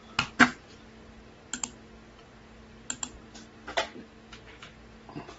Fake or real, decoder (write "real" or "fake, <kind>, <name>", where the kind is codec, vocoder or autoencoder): real